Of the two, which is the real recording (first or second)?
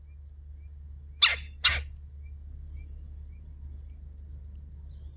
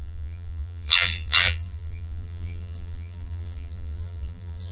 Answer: first